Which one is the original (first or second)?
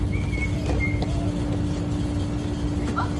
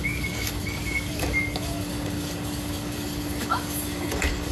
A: first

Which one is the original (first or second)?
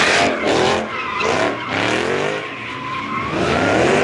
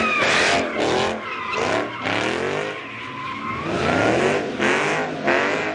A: second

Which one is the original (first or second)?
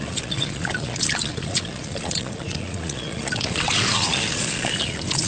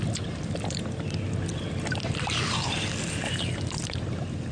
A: second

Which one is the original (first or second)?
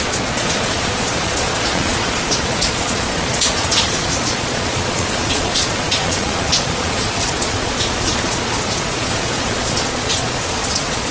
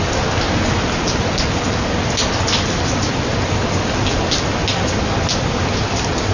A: second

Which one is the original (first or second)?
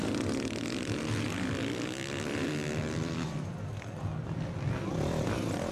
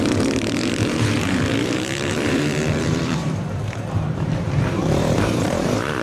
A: first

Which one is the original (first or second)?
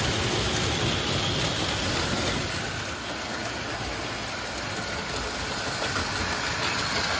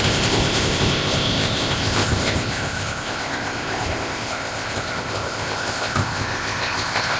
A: first